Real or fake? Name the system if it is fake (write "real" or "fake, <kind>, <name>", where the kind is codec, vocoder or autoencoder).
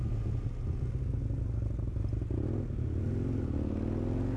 real